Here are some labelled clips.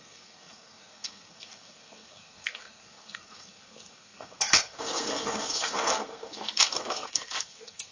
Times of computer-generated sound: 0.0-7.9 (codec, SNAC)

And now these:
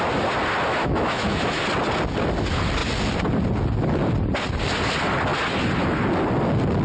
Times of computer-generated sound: 0.8-1.6 (autoencoder, DAC-VAE)

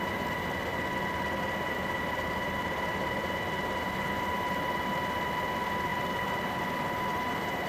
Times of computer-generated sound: 5.9-7.3 (vocoder, BigVGAN v2)